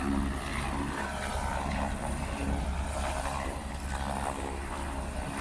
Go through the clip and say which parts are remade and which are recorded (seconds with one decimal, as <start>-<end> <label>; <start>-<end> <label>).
0.0-0.5 recorded; 0.5-3.7 remade; 3.7-5.4 recorded